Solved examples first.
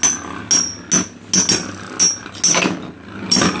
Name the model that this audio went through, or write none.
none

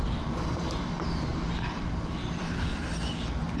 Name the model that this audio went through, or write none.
none